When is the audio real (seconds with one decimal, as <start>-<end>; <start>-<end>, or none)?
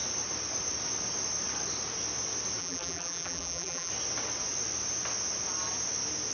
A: 0.0-2.6; 3.9-6.3